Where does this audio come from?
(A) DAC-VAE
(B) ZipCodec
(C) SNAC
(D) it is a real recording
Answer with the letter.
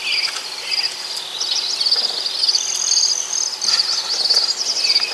D